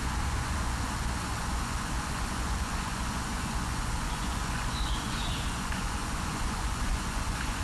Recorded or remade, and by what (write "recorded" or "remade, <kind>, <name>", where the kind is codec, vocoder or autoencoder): remade, vocoder, Vocos